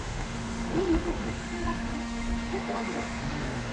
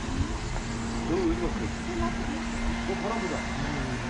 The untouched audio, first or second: second